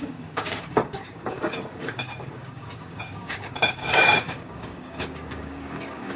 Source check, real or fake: fake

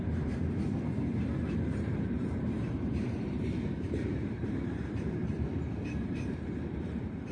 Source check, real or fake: fake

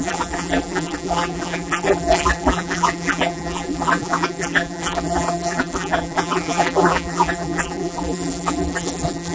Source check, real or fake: fake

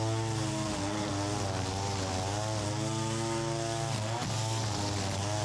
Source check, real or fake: real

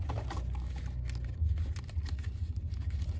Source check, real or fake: real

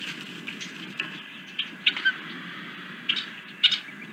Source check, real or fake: real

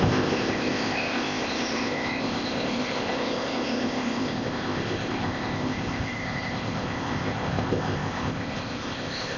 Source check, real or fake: fake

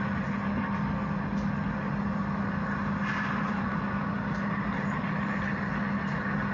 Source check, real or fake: real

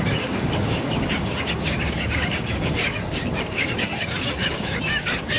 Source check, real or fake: fake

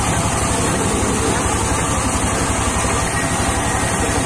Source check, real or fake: real